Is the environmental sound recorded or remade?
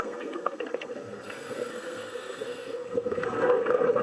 remade